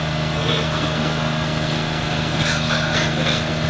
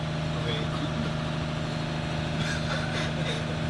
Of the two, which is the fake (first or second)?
first